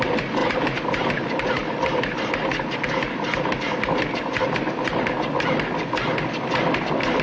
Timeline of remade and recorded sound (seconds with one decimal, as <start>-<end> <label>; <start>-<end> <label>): 0.0-7.2 recorded